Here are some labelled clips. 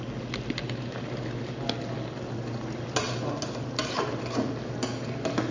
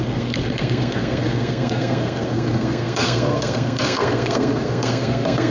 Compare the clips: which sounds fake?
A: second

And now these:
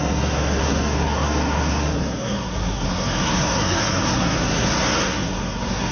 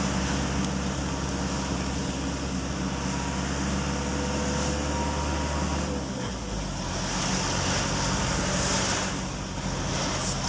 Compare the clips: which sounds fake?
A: first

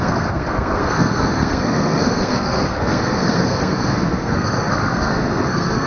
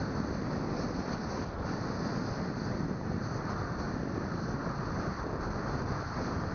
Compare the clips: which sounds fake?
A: first